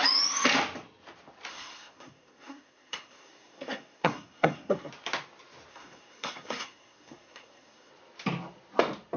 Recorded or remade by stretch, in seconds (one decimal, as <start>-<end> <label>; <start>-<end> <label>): 0.0-1.5 recorded; 1.5-4.9 remade; 4.9-5.7 recorded; 5.7-7.9 remade; 7.9-9.2 recorded